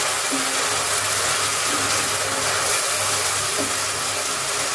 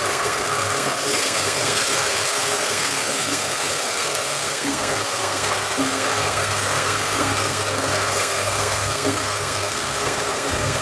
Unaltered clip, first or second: first